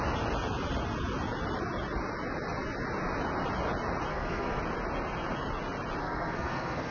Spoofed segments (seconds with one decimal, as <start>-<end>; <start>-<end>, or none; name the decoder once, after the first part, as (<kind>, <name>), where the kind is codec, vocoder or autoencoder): 4.1-4.6 (codec, SNAC); 6.0-6.9